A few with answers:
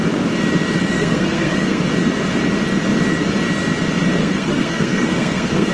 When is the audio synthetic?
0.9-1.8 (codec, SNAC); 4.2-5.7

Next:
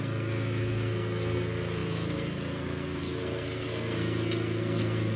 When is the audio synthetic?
0.0-5.2 (codec, SNAC)

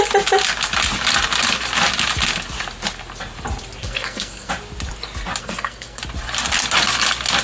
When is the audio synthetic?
3.8-4.5 (codec, SNAC); 5.4-6.0